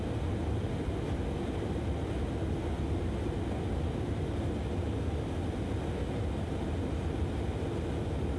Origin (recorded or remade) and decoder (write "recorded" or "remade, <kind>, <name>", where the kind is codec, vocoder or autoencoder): recorded